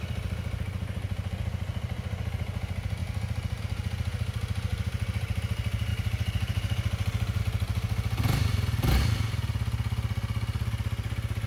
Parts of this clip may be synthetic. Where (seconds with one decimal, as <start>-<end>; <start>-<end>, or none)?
4.7-5.4; 5.9-7.4